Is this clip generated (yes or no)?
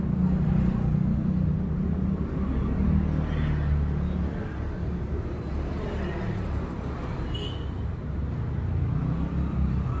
no